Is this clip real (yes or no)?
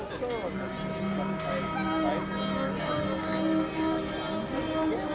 yes